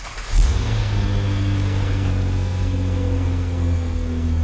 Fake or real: fake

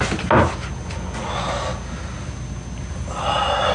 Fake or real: real